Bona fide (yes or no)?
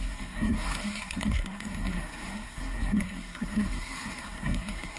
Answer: no